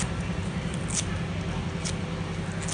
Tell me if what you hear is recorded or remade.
recorded